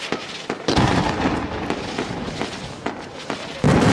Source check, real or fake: fake